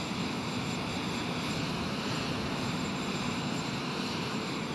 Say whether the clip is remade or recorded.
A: remade